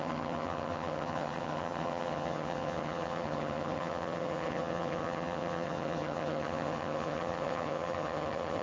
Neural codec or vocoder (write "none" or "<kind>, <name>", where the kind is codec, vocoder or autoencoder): vocoder, HiFi-GAN